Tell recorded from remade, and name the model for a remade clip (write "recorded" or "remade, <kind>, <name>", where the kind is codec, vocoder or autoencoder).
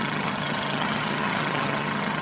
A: remade, vocoder, HiFi-GAN